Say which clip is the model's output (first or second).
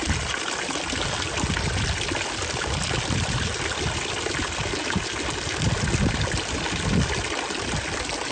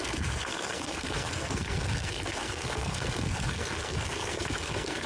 second